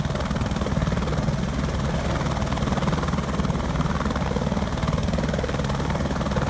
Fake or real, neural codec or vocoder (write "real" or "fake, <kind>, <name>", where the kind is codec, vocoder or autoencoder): real